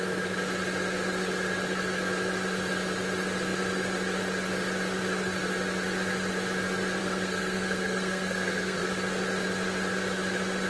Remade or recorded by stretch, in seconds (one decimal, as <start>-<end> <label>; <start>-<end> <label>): 0.0-7.0 recorded; 7.0-8.8 remade; 8.8-10.7 recorded